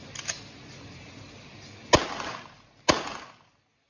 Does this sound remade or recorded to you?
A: recorded